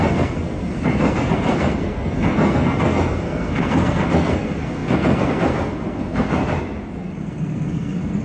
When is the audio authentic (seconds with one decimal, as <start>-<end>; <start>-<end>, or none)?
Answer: 6.4-7.0